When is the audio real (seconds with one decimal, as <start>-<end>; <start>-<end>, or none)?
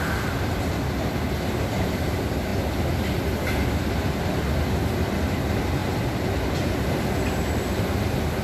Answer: 0.0-8.4